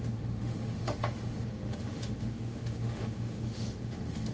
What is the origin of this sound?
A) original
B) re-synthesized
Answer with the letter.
B